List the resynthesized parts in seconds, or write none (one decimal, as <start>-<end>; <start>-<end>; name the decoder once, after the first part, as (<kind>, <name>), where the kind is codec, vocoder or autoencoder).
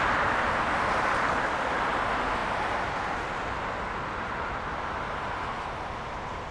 none